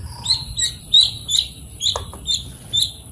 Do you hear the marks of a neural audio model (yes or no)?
no